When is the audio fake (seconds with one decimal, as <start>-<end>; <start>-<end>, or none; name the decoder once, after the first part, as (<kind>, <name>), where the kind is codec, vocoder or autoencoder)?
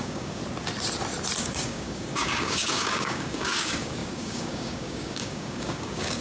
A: 0.0-0.4 (codec, DAC); 1.4-6.2